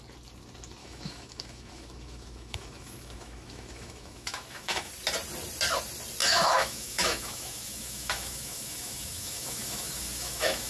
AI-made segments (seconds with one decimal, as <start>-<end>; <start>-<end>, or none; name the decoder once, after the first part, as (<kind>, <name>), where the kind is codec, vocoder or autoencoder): 0.8-4.9 (autoencoder, DAC-VAE); 6.2-10.7